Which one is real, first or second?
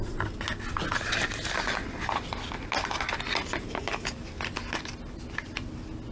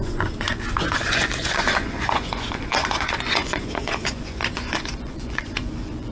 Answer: first